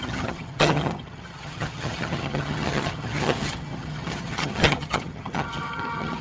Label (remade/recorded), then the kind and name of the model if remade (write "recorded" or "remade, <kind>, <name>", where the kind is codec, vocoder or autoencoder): remade, vocoder, HiFi-GAN